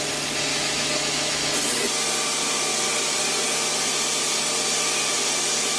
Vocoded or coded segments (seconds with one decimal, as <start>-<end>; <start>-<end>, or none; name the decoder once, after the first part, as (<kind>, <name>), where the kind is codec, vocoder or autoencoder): 0.5-1.5 (autoencoder, DAC-VAE)